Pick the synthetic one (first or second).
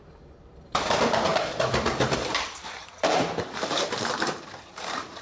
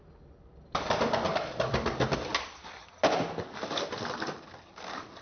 first